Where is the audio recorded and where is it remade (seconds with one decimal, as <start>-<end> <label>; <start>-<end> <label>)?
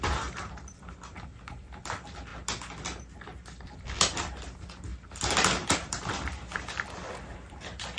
0.0-2.3 remade; 2.3-4.2 recorded; 4.2-8.0 remade